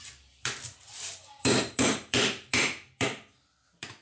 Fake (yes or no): yes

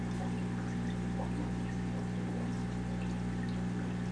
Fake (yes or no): no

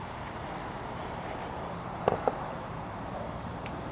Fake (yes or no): yes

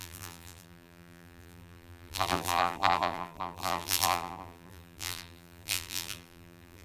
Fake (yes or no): yes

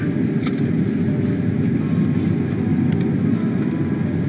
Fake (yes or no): no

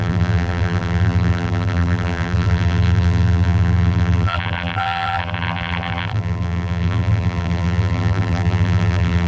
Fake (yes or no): yes